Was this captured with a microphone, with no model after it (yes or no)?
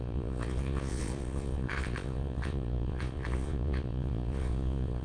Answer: no